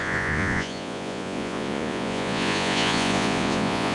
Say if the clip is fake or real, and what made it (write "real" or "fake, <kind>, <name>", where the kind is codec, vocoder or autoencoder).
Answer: fake, vocoder, Vocos